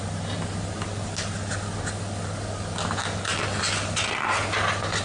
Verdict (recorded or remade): recorded